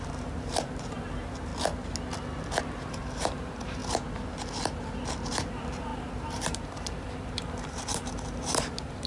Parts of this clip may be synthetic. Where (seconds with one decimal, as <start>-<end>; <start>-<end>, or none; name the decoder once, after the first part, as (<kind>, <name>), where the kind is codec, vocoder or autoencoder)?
0.0-1.5 (vocoder, BigVGAN v2); 2.6-3.8; 5.3-9.1